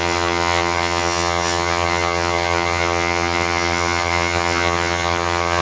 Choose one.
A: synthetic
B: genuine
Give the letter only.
A